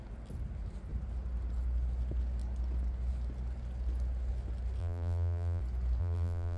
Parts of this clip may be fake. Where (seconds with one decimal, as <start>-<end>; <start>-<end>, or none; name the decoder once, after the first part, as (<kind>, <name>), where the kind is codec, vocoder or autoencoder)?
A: 4.8-5.6 (vocoder, BigVGAN v2); 6.0-6.6